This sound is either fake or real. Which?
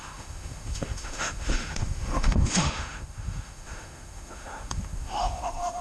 fake